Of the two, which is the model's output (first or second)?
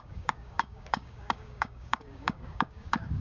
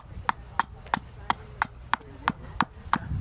first